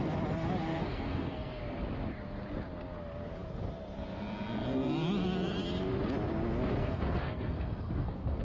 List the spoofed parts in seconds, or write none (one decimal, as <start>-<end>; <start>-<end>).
0.7-1.6; 6.8-8.4